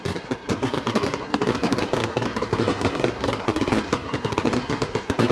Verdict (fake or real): fake